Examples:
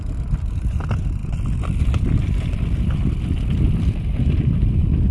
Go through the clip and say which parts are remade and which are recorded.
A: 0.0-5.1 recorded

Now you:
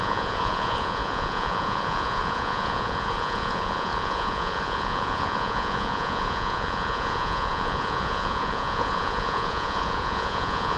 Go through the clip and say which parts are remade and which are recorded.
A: 0.0-10.8 remade

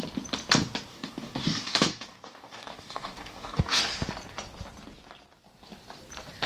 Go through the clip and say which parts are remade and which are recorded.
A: 0.0-0.9 recorded; 0.9-3.8 remade; 3.8-6.5 recorded